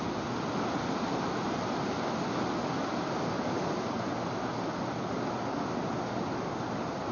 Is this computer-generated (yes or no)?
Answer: no